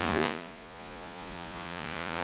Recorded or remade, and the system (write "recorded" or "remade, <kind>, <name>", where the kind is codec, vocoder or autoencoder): remade, vocoder, Vocos